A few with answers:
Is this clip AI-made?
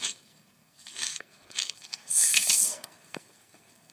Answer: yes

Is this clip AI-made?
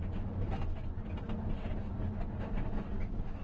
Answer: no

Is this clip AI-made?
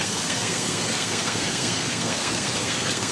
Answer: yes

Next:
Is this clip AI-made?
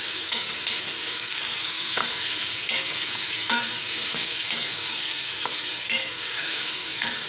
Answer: yes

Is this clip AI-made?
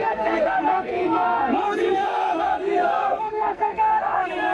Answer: yes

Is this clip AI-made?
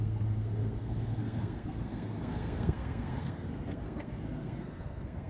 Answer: yes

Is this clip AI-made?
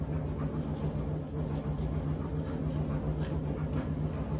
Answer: no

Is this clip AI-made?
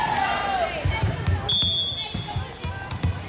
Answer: no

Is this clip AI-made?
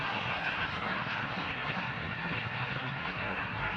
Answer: yes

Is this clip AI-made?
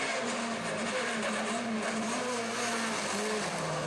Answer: no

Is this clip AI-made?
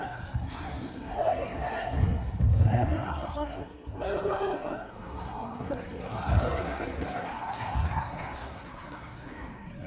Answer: yes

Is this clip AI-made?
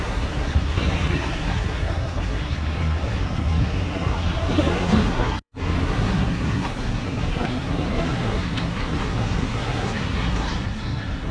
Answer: yes